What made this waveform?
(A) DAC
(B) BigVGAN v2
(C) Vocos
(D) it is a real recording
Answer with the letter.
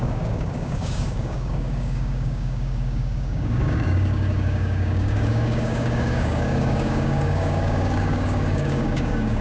A